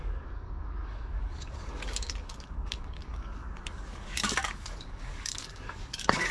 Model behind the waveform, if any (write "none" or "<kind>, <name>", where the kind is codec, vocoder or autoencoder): codec, DAC